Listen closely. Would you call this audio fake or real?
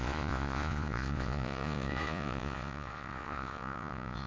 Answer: fake